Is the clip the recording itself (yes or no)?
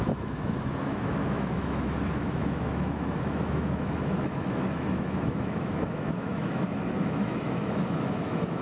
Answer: no